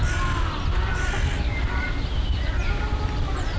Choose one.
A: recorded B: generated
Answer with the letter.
A